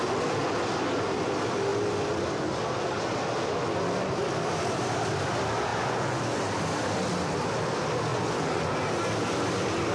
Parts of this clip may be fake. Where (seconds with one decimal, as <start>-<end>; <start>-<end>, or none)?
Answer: 5.7-6.2; 8.1-8.7